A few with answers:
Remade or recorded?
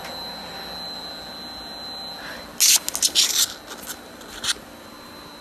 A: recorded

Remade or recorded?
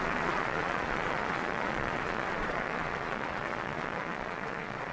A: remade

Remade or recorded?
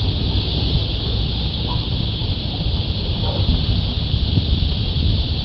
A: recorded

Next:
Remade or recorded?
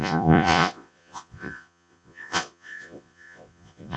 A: remade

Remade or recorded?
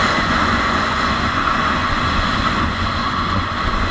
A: remade